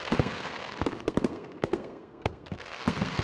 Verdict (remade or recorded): remade